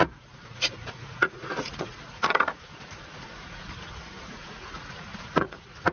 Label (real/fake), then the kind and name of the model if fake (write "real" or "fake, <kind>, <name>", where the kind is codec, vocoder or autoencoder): fake, vocoder, Vocos